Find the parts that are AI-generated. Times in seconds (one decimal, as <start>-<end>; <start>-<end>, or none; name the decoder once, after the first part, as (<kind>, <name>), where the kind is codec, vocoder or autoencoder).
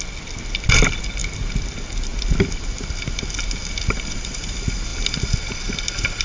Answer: none